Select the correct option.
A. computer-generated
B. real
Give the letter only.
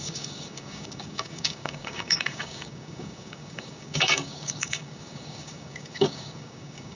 A